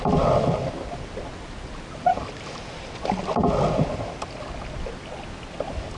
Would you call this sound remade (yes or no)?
no